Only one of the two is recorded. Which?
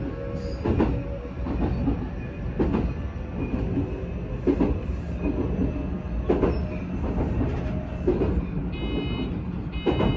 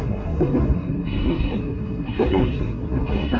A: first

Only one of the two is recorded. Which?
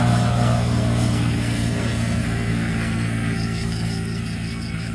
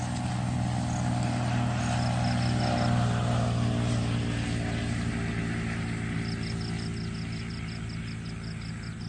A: second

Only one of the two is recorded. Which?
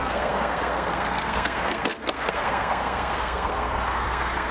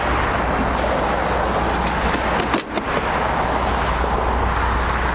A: second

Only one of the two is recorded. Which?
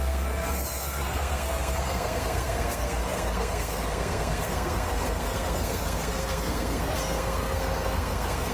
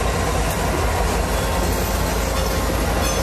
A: second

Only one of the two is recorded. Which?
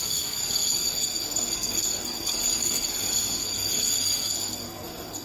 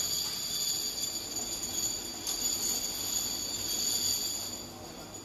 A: second